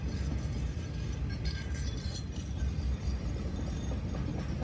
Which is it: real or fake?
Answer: real